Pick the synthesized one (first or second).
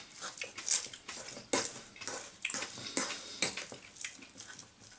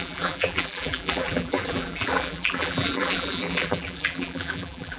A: second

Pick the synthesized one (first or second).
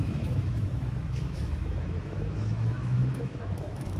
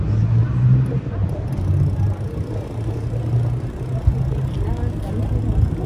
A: first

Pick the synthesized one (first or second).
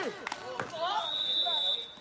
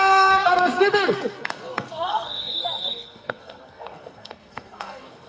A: second